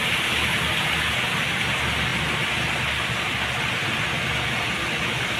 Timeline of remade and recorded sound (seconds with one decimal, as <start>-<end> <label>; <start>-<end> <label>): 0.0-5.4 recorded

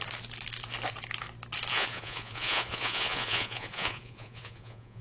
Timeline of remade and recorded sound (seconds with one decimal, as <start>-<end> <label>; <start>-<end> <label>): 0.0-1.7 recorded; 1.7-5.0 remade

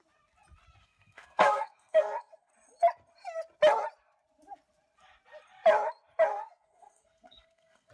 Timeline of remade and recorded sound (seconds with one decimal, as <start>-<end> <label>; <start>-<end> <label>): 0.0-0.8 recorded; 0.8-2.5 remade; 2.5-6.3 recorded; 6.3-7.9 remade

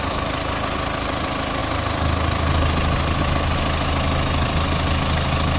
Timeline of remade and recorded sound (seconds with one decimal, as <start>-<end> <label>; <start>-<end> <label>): 0.0-5.6 recorded

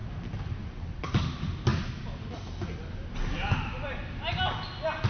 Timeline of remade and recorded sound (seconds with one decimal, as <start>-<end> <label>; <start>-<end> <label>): 0.0-5.1 recorded

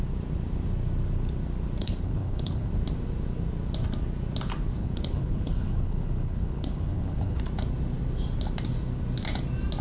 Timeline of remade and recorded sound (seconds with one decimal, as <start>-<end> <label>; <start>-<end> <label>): 0.0-1.8 recorded; 1.8-2.7 remade; 2.7-4.8 recorded; 4.8-7.4 remade; 7.4-9.8 recorded